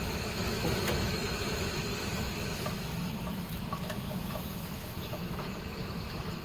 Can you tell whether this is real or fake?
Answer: fake